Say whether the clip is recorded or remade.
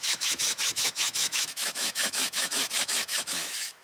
remade